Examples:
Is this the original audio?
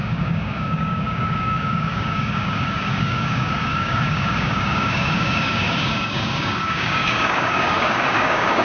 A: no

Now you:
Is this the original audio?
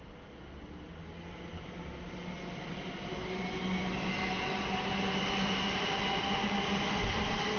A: yes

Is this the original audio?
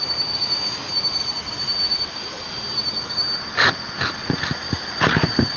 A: yes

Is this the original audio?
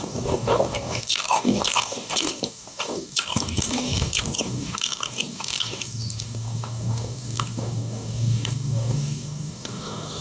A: no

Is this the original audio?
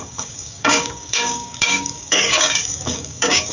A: no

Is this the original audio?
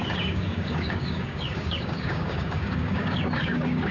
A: no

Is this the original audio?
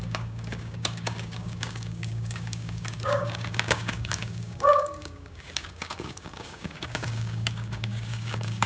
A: no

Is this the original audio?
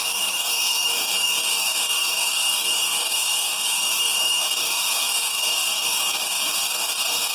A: no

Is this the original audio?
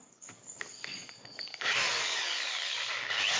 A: no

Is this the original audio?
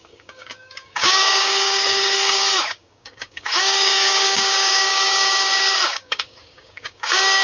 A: no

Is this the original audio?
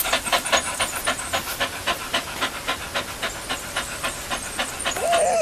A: yes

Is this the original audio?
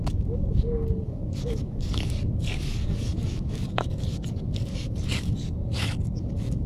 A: no